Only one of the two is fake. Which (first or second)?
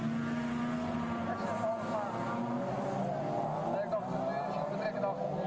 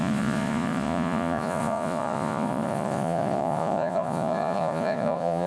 second